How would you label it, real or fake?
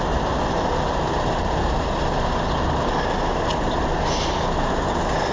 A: real